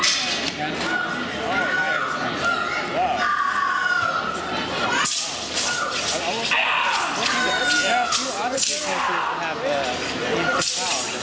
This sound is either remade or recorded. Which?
recorded